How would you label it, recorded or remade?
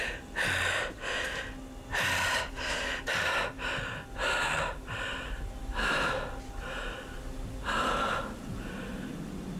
recorded